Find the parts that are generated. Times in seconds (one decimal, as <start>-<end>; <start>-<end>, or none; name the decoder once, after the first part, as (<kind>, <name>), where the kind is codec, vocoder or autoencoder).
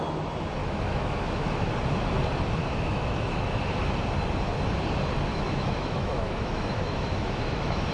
0.6-1.7 (autoencoder, DAC-VAE); 2.6-3.5; 5.3-7.9